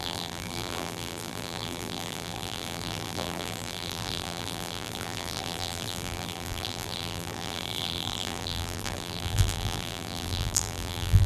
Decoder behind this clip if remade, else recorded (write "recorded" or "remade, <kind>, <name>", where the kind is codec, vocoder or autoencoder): remade, vocoder, BigVGAN v2